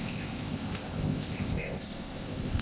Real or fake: fake